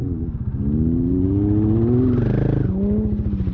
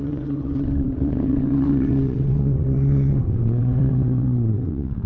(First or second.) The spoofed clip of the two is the second